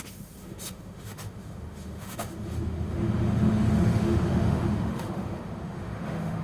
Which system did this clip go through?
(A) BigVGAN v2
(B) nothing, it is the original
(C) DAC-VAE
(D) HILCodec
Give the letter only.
C